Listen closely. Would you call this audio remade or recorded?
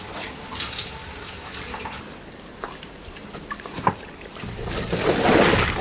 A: recorded